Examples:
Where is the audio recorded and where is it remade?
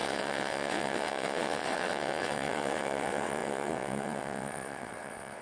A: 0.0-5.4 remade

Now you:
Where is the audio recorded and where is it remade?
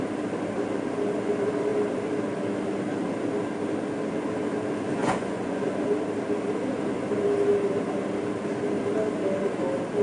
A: 0.0-5.0 recorded; 5.0-5.7 remade; 5.7-10.0 recorded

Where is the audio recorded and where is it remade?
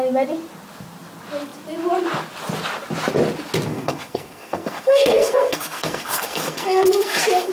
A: 0.0-3.7 recorded; 3.7-7.5 remade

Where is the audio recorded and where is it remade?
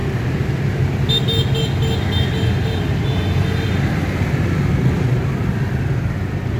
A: 0.0-6.6 recorded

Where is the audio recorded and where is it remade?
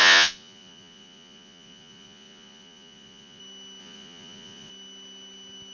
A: 0.0-3.4 remade; 3.4-3.8 recorded; 3.8-4.7 remade; 4.7-5.7 recorded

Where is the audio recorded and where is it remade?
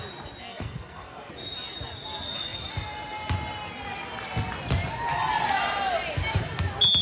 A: 0.0-0.5 recorded; 0.5-1.3 remade; 1.3-7.0 recorded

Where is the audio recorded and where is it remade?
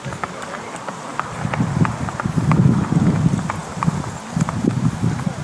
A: 0.0-5.4 recorded